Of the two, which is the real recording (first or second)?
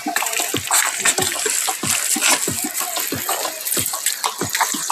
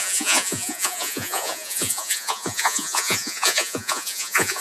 first